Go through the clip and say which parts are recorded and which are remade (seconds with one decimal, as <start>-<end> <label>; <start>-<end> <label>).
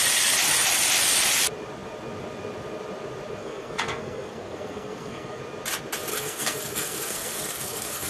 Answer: 0.0-3.4 recorded; 3.4-5.4 remade; 5.4-6.1 recorded; 6.1-8.1 remade